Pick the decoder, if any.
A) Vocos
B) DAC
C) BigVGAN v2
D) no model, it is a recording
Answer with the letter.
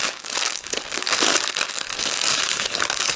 B